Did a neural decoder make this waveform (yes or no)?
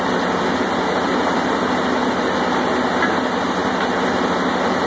no